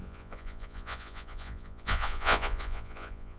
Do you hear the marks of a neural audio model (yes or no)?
yes